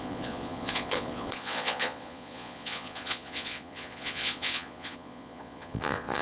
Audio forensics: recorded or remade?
remade